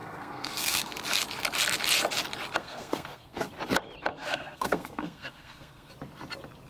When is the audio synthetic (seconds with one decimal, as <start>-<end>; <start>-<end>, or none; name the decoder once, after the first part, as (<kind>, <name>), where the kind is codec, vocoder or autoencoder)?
0.0-0.9 (codec, SNAC); 2.6-3.5; 4.1-5.9